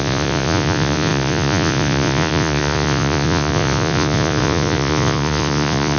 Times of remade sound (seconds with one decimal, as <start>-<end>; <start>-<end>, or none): 0.0-6.0